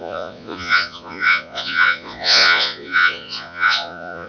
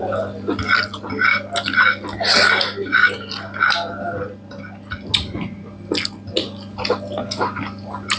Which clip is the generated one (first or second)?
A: first